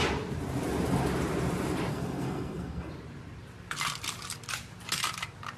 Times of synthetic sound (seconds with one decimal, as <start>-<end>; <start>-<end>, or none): 1.9-2.9